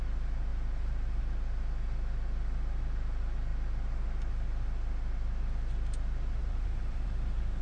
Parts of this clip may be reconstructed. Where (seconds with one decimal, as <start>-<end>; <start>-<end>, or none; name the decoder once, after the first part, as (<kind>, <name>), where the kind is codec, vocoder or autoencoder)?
0.5-1.2 (vocoder, BigVGAN v2); 6.4-7.6